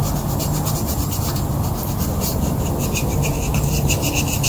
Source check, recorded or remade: recorded